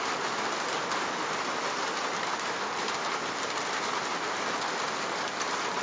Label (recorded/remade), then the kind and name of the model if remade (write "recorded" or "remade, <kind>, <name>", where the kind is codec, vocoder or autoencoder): recorded